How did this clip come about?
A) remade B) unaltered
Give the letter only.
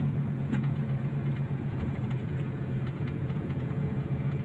A